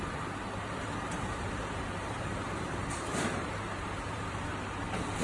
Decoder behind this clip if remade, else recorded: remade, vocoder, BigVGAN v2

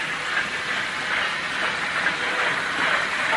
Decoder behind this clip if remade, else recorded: recorded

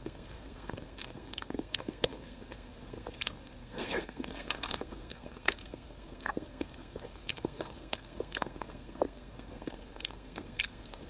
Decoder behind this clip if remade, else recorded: remade, codec, SNAC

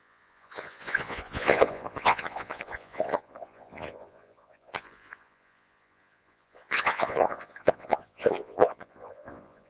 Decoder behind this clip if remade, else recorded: remade, vocoder, Vocos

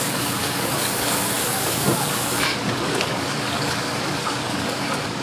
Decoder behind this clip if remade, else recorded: remade, codec, DAC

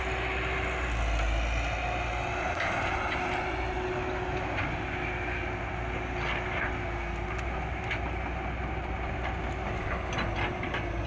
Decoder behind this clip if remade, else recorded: recorded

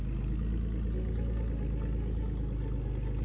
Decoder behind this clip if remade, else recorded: recorded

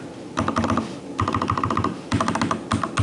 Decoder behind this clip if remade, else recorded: recorded